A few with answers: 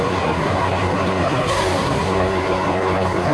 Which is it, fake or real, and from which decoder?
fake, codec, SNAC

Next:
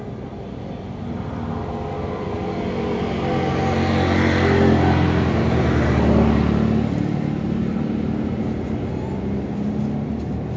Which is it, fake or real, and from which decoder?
real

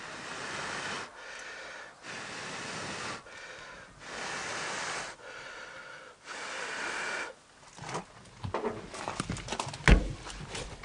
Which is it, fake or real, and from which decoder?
real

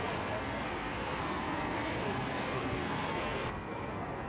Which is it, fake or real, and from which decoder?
fake, codec, SNAC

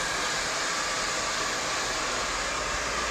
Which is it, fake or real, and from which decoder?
real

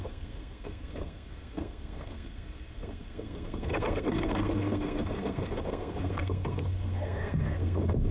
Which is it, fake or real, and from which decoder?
fake, codec, SNAC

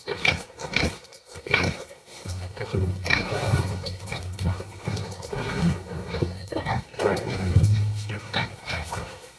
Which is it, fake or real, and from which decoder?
fake, codec, SNAC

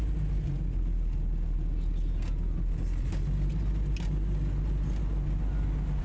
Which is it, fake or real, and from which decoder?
real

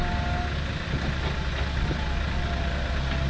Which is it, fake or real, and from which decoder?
real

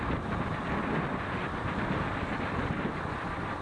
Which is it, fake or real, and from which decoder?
real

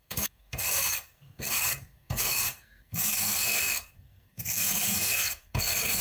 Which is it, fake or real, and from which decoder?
fake, codec, SNAC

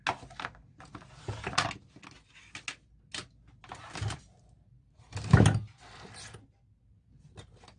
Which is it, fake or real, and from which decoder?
real